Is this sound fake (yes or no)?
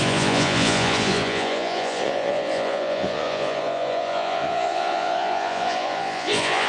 yes